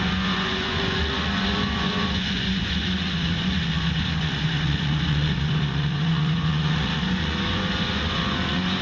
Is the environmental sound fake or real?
fake